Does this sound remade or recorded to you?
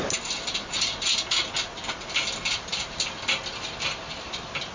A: recorded